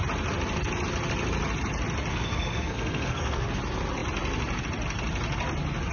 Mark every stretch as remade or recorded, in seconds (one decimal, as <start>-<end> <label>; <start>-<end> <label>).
0.0-2.1 recorded; 2.1-3.6 remade; 3.6-5.9 recorded